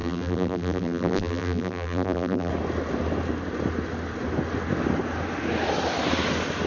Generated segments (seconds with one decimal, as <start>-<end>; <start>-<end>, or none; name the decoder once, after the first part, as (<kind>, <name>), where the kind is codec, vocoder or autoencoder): 0.0-2.5 (vocoder, BigVGAN v2)